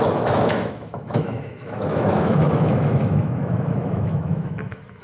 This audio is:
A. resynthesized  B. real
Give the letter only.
A